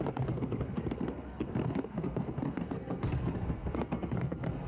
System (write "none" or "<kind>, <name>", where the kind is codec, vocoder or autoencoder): codec, SNAC